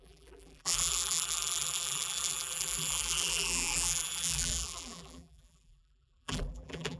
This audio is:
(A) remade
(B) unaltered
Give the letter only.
A